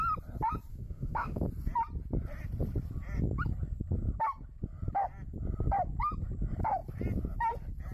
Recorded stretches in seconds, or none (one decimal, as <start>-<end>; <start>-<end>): 0.0-0.7; 1.4-7.9